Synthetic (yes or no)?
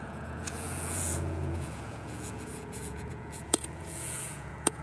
yes